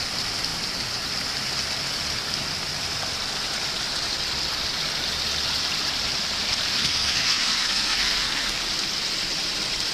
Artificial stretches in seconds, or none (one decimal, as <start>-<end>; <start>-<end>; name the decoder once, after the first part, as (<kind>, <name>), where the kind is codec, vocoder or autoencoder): 6.7-8.6 (codec, SNAC)